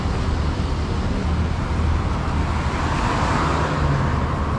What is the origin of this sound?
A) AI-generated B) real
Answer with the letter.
B